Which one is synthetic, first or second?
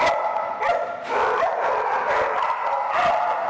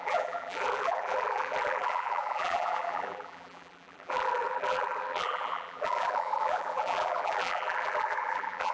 second